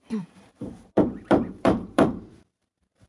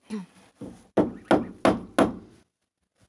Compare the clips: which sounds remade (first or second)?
first